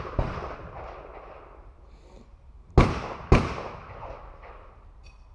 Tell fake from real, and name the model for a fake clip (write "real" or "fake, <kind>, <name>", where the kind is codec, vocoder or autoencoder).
real